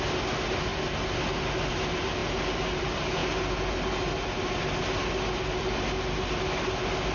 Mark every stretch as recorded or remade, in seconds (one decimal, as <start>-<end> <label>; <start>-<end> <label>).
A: 0.0-7.1 recorded